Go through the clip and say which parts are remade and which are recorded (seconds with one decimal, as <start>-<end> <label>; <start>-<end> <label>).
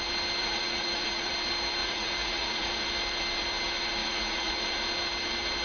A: 0.0-0.4 recorded; 0.4-1.3 remade; 1.3-1.8 recorded; 1.8-2.7 remade; 2.7-4.0 recorded; 4.0-4.5 remade; 4.5-5.6 recorded